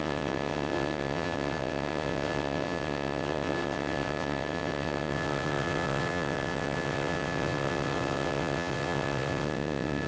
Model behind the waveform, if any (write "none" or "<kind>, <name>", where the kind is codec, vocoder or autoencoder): vocoder, WaveNeXt